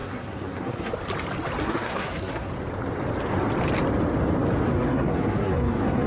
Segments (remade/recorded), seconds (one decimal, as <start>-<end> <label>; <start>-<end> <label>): 0.0-0.9 remade; 0.9-1.6 recorded; 1.6-2.5 remade; 2.5-4.7 recorded; 4.7-6.1 remade